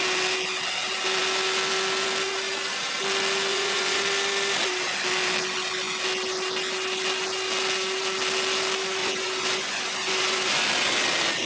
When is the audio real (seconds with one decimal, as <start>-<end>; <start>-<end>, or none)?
0.0-3.5; 4.0-9.0; 10.6-11.5